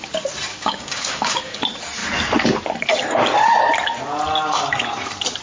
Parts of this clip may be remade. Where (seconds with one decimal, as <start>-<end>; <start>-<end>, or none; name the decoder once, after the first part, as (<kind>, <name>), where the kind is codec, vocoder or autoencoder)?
0.5-1.6 (codec, DAC)